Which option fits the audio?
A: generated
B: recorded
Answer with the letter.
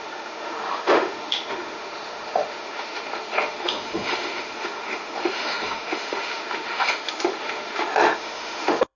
A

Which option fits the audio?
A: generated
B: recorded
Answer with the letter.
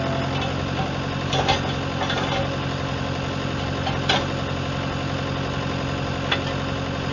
B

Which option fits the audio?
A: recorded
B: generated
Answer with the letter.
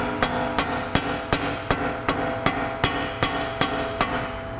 A